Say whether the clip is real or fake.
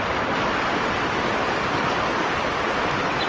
real